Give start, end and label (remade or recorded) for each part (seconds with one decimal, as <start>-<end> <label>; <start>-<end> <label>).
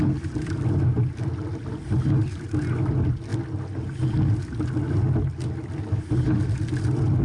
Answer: 0.0-7.2 recorded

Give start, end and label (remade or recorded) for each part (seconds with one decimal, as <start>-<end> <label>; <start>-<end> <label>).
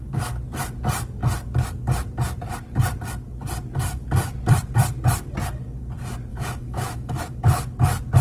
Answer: 0.0-6.3 recorded; 6.3-7.2 remade; 7.2-8.2 recorded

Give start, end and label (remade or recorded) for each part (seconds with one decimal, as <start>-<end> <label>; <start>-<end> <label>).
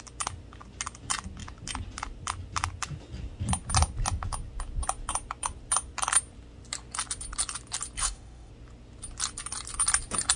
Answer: 0.0-8.0 recorded; 8.0-8.5 remade; 8.5-10.4 recorded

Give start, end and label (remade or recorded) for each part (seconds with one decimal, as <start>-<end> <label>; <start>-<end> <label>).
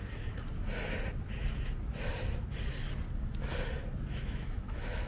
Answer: 0.0-3.1 recorded; 3.1-3.5 remade; 3.5-4.1 recorded; 4.1-5.1 remade